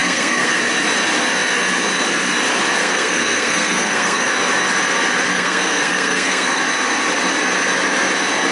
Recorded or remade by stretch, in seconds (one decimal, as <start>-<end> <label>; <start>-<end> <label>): 0.0-0.6 remade; 0.6-2.8 recorded; 2.8-4.3 remade; 4.3-5.3 recorded; 5.3-6.6 remade; 6.6-8.5 recorded